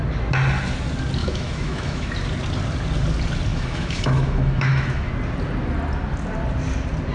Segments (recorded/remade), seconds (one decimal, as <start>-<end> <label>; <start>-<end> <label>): 0.0-1.2 recorded; 1.2-2.1 remade; 2.1-3.5 recorded; 3.5-5.1 remade; 5.1-7.1 recorded